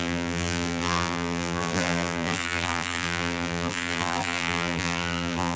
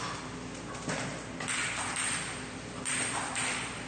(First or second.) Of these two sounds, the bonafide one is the second